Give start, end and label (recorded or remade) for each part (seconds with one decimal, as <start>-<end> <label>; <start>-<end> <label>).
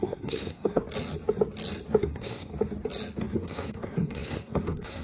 0.0-0.8 remade; 0.8-2.0 recorded; 2.0-2.5 remade; 2.5-3.2 recorded; 3.2-5.0 remade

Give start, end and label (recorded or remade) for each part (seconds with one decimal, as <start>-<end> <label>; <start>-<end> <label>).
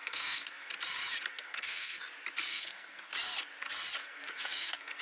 0.0-0.7 remade; 0.7-1.3 recorded; 1.3-2.0 remade; 2.0-2.5 recorded; 2.5-3.1 remade; 3.1-4.0 recorded; 4.0-5.0 remade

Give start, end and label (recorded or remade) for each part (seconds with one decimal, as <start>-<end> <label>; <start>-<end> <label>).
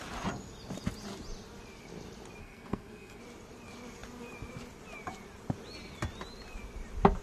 0.0-2.4 recorded; 2.4-3.2 remade; 3.2-7.2 recorded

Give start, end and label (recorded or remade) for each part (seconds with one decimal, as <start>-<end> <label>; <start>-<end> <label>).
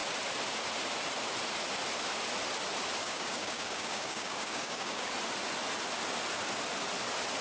0.0-3.0 recorded; 3.0-5.1 remade; 5.1-7.4 recorded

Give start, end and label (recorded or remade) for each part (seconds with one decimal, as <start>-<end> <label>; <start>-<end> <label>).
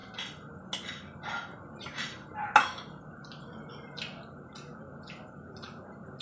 0.0-6.2 recorded